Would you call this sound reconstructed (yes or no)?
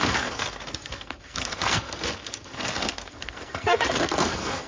yes